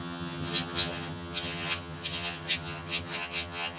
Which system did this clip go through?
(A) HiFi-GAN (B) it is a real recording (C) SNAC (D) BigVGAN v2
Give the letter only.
A